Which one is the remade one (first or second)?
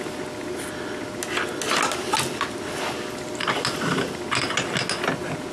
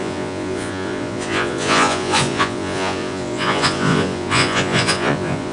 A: second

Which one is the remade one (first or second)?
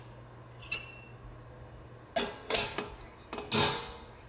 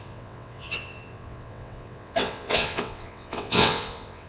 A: second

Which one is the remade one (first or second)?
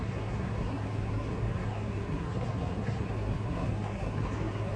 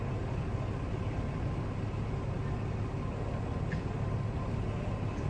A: first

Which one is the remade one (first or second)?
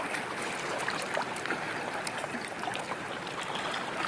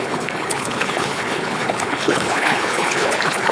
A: second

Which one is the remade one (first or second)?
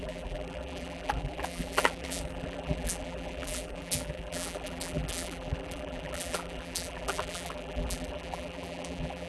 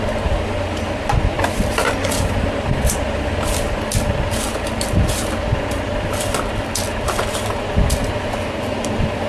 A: first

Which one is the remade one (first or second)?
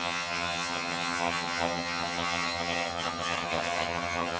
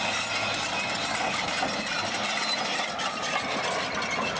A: first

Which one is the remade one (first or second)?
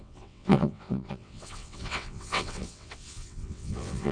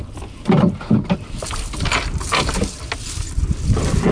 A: first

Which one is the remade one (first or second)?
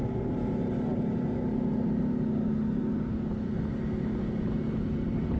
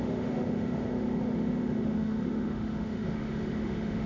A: second